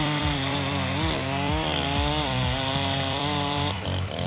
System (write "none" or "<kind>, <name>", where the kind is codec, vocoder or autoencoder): vocoder, BigVGAN v2